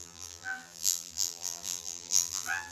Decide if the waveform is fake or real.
fake